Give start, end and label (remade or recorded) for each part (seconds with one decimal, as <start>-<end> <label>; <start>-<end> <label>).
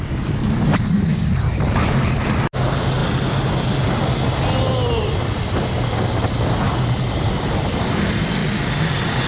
0.0-9.3 recorded